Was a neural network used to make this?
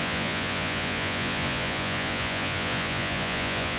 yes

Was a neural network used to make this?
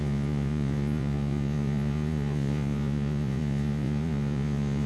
yes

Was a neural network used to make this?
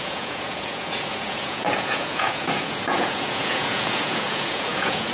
yes